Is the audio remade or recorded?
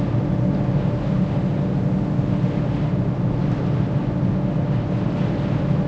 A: recorded